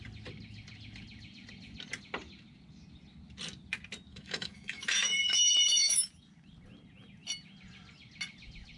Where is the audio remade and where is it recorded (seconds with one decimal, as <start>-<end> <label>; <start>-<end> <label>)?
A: 0.0-4.1 recorded; 4.1-6.1 remade; 6.1-8.8 recorded